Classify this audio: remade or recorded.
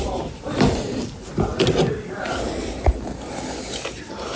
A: recorded